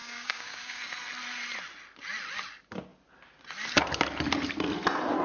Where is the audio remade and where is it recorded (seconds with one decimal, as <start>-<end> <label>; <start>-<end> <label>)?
0.0-0.8 remade; 0.8-5.2 recorded

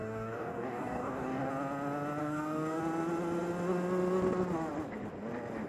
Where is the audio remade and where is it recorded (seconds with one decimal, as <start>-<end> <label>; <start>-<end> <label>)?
0.0-1.5 remade; 1.5-2.2 recorded; 2.2-2.8 remade; 2.8-5.7 recorded

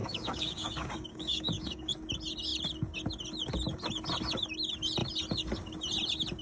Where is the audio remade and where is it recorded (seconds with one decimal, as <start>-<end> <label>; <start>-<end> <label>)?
0.0-1.9 remade; 1.9-6.4 recorded

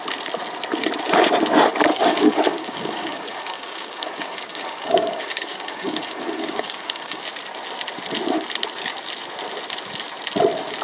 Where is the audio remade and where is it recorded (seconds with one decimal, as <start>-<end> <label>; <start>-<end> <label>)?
0.0-1.9 recorded; 1.9-7.2 remade; 7.2-10.8 recorded

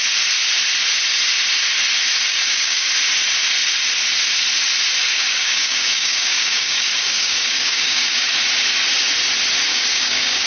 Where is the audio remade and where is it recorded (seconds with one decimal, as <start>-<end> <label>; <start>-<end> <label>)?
0.0-2.3 recorded; 2.3-2.9 remade; 2.9-5.1 recorded; 5.1-8.3 remade; 8.3-9.7 recorded; 9.7-10.5 remade

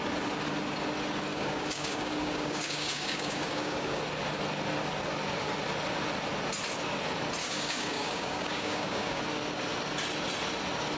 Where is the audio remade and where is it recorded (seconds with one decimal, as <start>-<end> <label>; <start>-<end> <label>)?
0.0-1.3 recorded; 1.3-4.0 remade; 4.0-7.4 recorded; 7.4-9.2 remade; 9.2-11.0 recorded

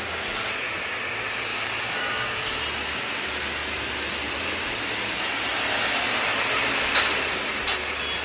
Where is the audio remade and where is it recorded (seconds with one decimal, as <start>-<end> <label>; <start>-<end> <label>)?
0.0-1.5 recorded; 1.5-2.6 remade; 2.6-8.2 recorded